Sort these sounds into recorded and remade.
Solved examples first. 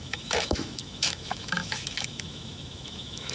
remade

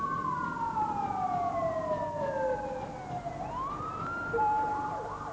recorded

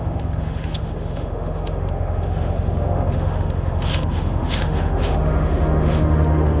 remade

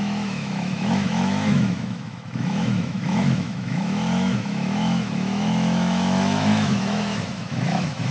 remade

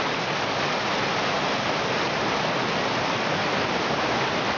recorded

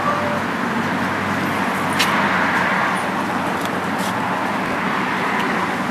recorded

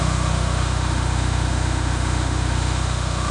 remade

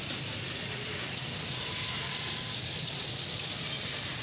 recorded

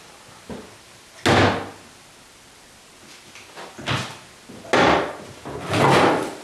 recorded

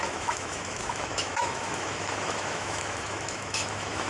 remade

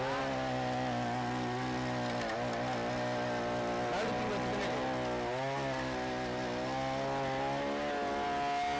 recorded